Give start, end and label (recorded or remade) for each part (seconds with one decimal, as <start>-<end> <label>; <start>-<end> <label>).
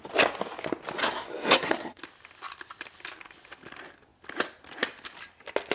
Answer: 0.0-1.0 recorded; 1.0-2.0 remade; 2.0-5.7 recorded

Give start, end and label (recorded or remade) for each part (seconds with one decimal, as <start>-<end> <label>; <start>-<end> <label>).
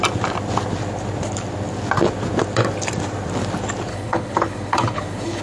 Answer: 0.0-3.9 recorded; 3.9-5.4 remade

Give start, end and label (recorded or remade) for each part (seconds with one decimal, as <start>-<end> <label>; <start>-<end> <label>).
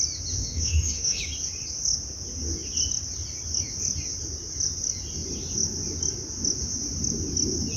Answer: 0.0-0.4 recorded; 0.4-1.2 remade; 1.2-7.8 recorded